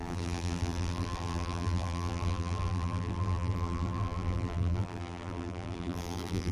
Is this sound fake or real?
fake